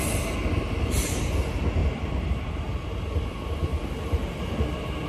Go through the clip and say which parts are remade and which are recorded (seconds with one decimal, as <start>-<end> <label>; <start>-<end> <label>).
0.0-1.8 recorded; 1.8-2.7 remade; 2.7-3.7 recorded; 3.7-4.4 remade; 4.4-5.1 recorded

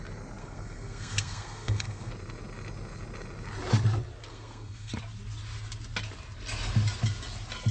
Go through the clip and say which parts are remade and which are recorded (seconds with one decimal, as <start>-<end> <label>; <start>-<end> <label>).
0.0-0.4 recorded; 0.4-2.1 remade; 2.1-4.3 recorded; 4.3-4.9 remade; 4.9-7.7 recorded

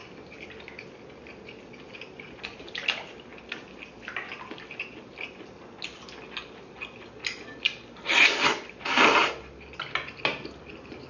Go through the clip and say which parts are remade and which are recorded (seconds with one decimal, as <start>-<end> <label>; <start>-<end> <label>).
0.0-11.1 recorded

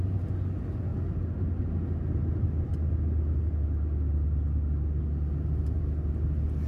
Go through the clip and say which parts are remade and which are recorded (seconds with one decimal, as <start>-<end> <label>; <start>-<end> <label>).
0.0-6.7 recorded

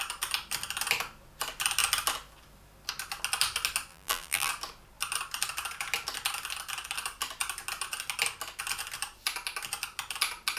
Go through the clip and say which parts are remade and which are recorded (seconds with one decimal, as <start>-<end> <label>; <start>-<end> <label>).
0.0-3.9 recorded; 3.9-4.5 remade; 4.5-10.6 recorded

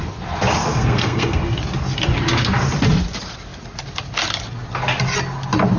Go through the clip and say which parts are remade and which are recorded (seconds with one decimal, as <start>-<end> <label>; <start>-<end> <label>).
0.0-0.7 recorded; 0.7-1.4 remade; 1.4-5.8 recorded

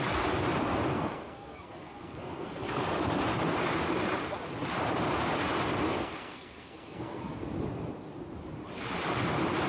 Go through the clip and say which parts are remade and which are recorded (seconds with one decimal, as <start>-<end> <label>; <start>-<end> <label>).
0.0-0.9 recorded; 0.9-2.7 remade; 2.7-5.9 recorded; 5.9-7.4 remade; 7.4-9.7 recorded